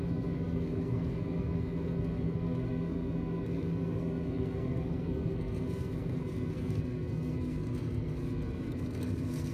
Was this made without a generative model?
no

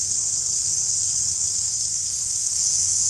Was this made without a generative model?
no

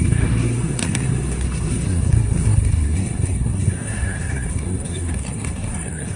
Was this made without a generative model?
no